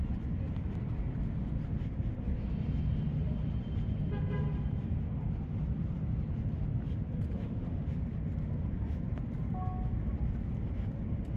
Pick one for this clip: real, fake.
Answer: real